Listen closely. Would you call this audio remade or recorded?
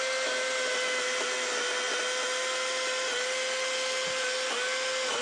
recorded